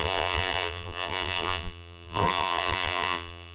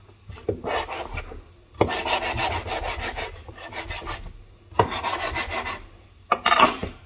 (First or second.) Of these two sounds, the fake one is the first